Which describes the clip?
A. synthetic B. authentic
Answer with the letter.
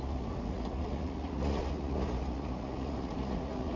A